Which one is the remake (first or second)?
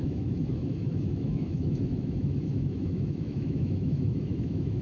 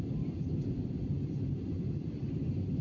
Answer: first